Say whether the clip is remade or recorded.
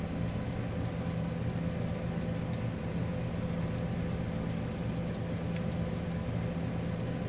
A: recorded